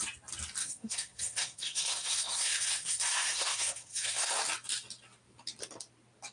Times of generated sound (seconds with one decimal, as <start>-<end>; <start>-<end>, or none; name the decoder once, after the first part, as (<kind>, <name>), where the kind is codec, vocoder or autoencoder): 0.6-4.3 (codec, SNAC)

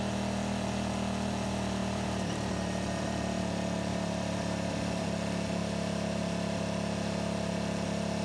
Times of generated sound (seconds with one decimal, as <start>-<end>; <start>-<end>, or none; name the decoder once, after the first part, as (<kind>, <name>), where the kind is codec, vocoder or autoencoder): 1.8-3.4 (vocoder, BigVGAN v2); 3.9-5.1

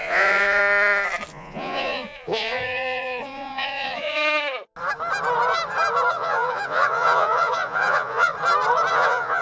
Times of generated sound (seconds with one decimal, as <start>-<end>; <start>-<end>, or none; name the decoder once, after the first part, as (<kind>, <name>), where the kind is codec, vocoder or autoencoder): 0.0-0.6 (vocoder, Vocos); 1.3-4.2; 6.1-8.3; 8.9-9.4

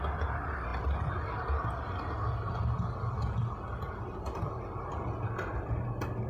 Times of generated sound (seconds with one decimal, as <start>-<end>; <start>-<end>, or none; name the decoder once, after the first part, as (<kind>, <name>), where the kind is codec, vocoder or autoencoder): none

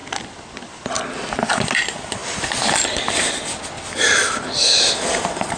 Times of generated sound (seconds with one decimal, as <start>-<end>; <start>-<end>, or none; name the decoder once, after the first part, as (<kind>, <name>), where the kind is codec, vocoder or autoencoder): none

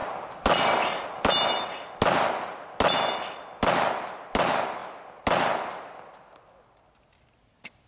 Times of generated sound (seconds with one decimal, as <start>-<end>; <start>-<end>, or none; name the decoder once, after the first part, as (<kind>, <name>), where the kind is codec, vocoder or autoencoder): none